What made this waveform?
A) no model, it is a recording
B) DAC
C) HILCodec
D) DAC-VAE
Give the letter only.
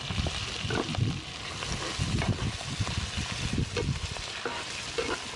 A